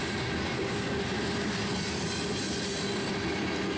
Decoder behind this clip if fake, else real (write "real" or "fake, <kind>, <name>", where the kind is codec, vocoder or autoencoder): real